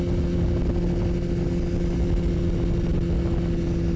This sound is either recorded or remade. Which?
recorded